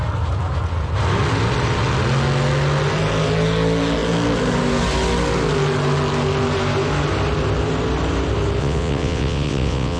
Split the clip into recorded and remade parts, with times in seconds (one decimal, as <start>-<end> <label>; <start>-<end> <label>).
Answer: 0.0-8.6 recorded; 8.6-10.0 remade